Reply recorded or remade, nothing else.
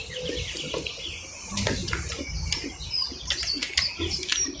recorded